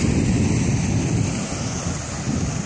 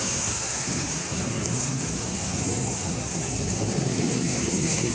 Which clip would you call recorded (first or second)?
first